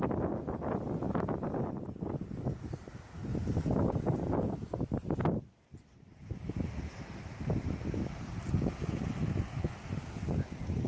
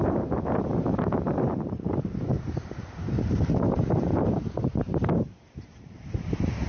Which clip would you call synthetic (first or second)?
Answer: second